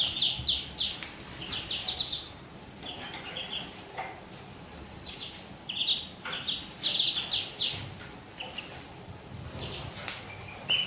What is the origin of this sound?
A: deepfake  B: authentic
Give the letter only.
B